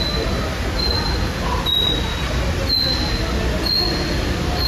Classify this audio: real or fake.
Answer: real